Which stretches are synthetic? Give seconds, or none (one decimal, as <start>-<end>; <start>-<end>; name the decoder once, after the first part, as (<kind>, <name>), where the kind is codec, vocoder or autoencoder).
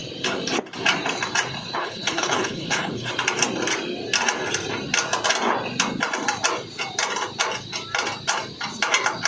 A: 1.8-3.1 (codec, HILCodec)